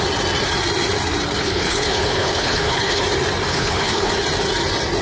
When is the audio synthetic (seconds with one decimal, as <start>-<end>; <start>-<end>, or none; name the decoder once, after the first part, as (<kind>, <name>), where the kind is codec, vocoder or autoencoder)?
1.4-3.0 (codec, HILCodec); 3.5-4.1